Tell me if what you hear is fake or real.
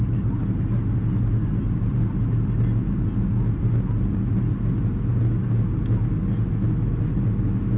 real